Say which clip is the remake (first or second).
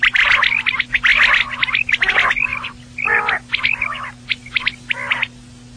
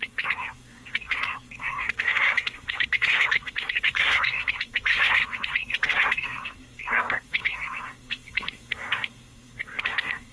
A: second